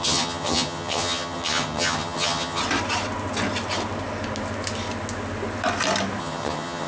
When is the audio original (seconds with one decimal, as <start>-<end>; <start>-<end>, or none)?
2.6-6.2